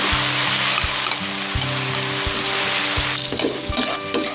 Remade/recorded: recorded